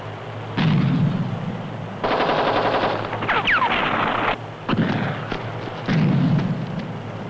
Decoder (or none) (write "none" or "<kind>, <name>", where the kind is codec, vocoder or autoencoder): none